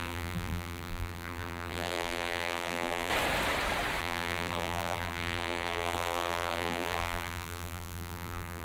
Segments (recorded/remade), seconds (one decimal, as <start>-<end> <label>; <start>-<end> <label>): 0.0-3.1 remade; 3.1-4.0 recorded; 4.0-8.6 remade